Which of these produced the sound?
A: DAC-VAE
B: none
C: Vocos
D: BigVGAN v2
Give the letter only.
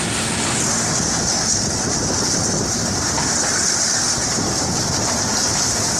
B